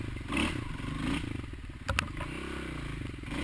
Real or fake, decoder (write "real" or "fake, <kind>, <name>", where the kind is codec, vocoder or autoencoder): real